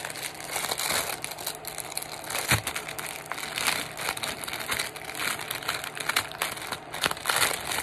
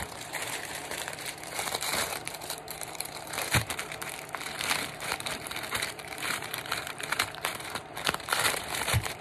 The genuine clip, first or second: first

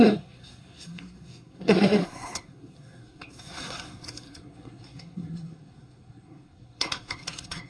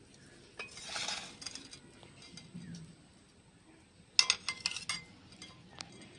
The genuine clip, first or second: second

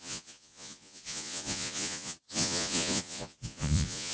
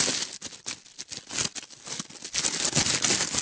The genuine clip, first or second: second